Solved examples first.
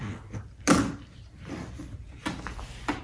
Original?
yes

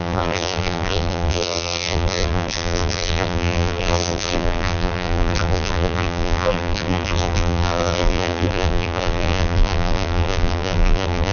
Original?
no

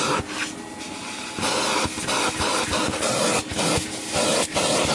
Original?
yes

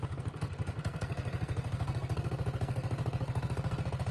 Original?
no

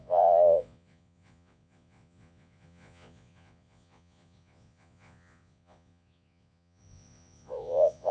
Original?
no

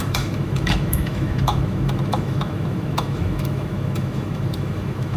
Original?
no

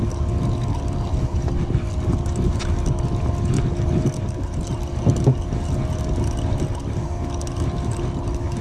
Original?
yes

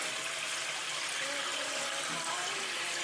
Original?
yes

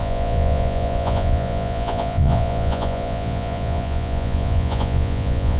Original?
no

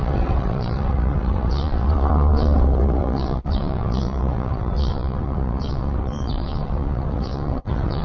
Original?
no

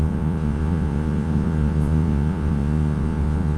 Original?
no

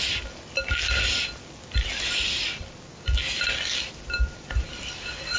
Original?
yes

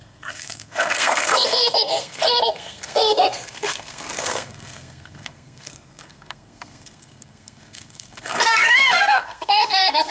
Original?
no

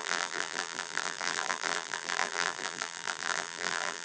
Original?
no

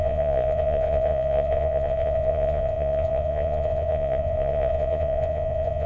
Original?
no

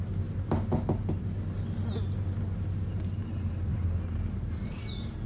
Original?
yes